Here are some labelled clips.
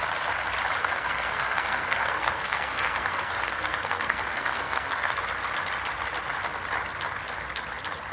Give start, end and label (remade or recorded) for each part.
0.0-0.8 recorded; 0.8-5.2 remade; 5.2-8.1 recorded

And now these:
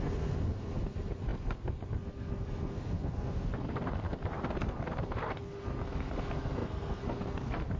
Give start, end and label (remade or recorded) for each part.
0.0-4.2 remade; 4.2-4.7 recorded; 4.7-7.8 remade